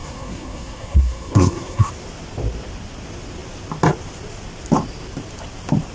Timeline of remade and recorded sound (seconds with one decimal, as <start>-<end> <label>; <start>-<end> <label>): 0.0-1.9 remade; 1.9-5.9 recorded